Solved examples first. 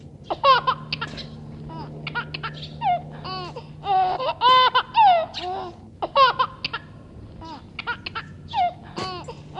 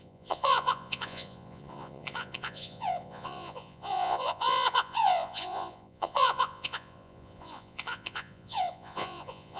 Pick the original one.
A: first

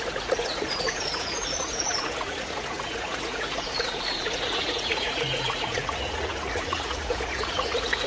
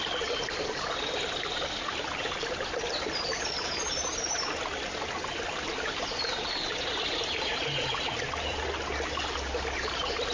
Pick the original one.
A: second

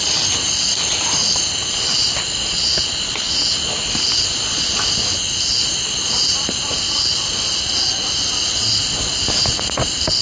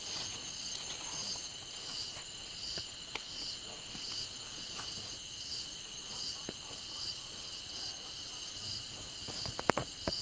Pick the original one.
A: first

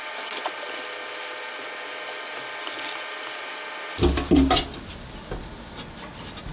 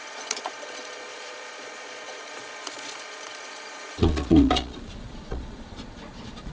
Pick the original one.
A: first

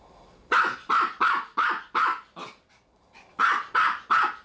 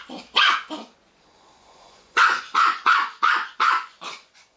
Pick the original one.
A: first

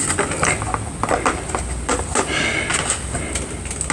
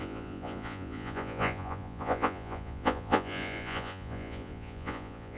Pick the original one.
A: first